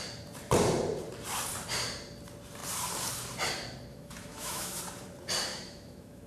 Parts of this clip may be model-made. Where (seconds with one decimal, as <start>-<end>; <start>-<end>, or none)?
3.9-4.8; 5.5-6.3